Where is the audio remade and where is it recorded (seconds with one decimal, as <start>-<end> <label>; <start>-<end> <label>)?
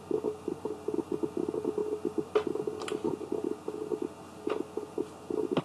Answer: 0.0-5.6 recorded